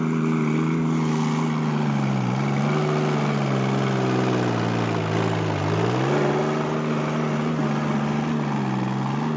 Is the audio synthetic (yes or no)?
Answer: no